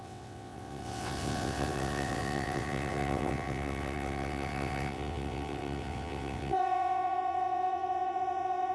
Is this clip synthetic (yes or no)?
yes